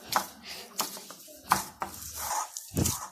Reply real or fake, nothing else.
real